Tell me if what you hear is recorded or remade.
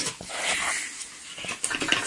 recorded